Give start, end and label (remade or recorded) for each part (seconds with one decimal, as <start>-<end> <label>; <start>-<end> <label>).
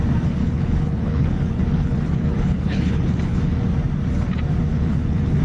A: 0.0-0.4 recorded; 0.4-3.6 remade; 3.6-4.7 recorded; 4.7-5.4 remade